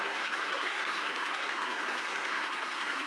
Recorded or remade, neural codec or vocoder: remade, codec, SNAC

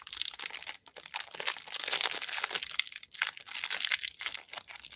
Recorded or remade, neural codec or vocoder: recorded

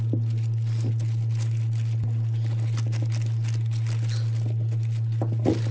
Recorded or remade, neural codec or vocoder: recorded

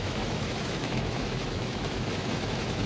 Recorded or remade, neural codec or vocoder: remade, autoencoder, DAC-VAE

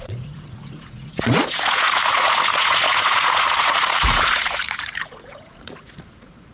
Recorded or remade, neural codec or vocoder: remade, vocoder, Vocos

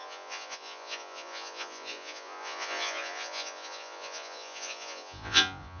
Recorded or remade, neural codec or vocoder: remade, vocoder, Vocos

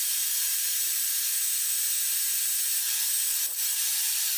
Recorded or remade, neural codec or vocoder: remade, vocoder, BigVGAN v2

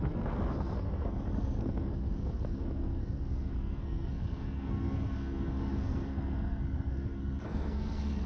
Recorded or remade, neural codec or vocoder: remade, codec, SNAC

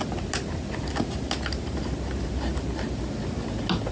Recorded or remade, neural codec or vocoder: recorded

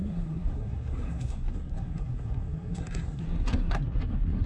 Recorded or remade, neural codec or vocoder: remade, codec, SNAC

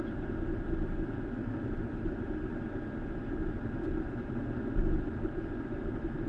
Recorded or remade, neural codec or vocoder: recorded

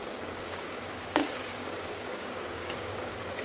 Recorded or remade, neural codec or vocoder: remade, codec, DAC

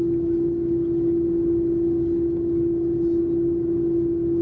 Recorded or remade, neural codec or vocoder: recorded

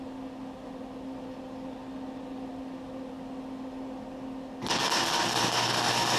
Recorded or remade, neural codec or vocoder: recorded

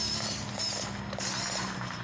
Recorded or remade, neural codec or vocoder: recorded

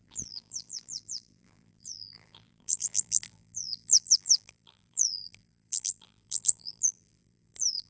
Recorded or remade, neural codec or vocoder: remade, vocoder, BigVGAN v2